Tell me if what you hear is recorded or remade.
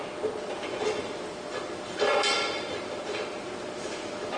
recorded